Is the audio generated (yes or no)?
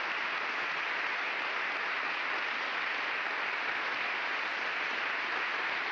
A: no